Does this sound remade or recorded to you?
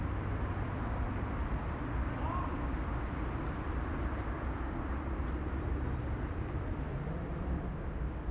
remade